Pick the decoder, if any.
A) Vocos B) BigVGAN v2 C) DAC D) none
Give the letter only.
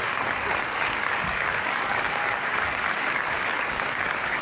C